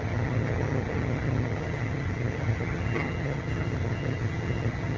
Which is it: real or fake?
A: fake